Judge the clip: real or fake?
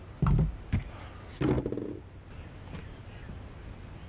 real